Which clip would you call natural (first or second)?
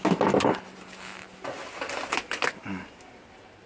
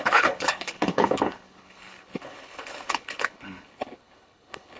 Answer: first